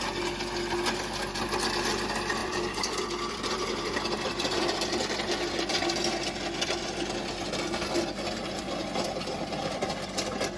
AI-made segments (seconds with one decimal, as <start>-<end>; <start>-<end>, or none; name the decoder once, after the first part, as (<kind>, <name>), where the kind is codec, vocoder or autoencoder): 2.4-7.4 (vocoder, BigVGAN v2); 8.8-9.9